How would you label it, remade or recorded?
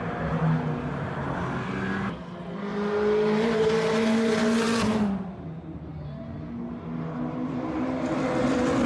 recorded